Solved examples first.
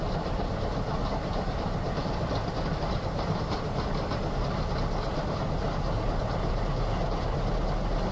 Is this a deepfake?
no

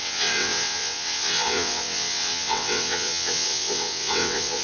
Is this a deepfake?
yes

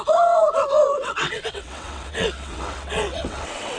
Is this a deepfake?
yes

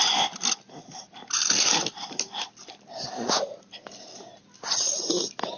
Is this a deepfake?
no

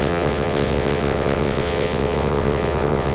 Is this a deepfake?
yes